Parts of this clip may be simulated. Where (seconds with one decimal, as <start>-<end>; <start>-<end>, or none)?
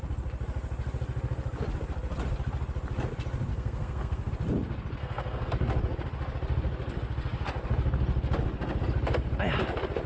3.5-4.3; 5.0-5.5